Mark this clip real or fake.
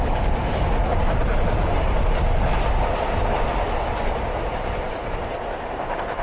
real